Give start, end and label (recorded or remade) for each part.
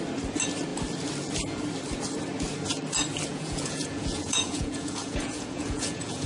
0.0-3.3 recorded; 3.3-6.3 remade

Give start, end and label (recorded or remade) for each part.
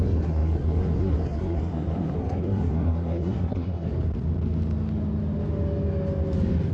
0.0-3.9 remade; 3.9-6.7 recorded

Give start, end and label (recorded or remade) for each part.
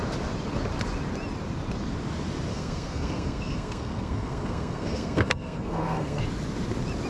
0.0-2.5 recorded; 2.5-6.2 remade; 6.2-7.1 recorded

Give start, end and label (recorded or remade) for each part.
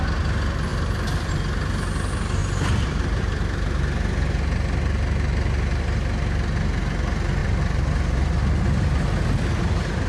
0.0-0.7 recorded; 0.7-1.3 remade; 1.3-2.4 recorded; 2.4-3.2 remade; 3.2-7.4 recorded; 7.4-8.6 remade; 8.6-10.1 recorded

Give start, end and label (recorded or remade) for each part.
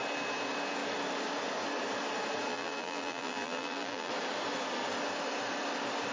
0.0-2.5 recorded; 2.5-4.1 remade; 4.1-6.1 recorded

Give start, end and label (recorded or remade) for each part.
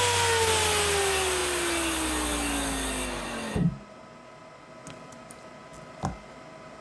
0.0-6.8 recorded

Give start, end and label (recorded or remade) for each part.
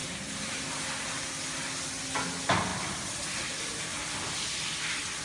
0.0-5.2 recorded